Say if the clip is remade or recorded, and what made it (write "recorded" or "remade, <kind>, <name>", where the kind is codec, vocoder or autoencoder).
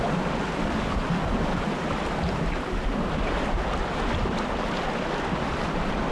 recorded